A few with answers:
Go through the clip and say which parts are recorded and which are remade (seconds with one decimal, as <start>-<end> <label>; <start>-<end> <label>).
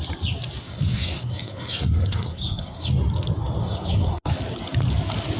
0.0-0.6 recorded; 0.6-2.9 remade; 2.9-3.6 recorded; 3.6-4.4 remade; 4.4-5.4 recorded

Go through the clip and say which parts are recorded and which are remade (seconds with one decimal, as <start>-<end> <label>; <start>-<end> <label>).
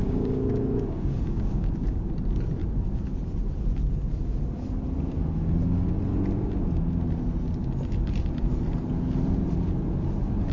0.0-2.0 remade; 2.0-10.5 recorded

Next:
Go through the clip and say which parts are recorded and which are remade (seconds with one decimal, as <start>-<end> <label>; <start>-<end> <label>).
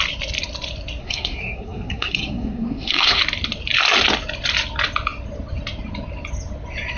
0.0-1.0 recorded; 1.0-3.2 remade; 3.2-7.0 recorded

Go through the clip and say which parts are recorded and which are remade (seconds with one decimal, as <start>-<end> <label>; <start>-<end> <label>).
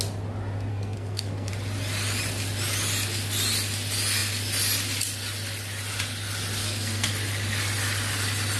0.0-0.7 recorded; 0.7-1.5 remade; 1.5-6.6 recorded; 6.6-7.1 remade; 7.1-8.6 recorded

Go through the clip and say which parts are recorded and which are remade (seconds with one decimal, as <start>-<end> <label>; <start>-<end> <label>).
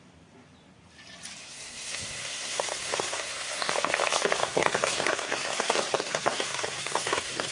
0.0-1.4 recorded; 1.4-3.7 remade; 3.7-4.4 recorded; 4.4-7.5 remade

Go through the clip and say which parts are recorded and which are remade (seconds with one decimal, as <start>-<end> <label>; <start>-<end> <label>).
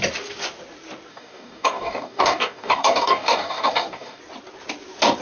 0.0-1.1 recorded; 1.1-4.2 remade; 4.2-5.2 recorded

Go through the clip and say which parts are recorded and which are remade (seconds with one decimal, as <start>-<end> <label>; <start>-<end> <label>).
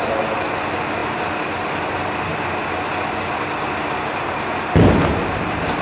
0.0-5.8 recorded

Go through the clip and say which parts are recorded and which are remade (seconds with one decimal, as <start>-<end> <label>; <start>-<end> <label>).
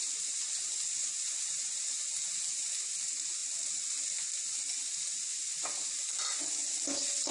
0.0-1.0 recorded; 1.0-1.9 remade; 1.9-7.3 recorded